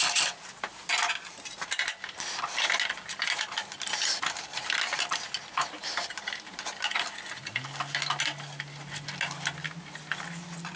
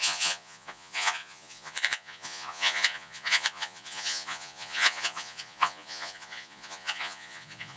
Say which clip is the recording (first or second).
first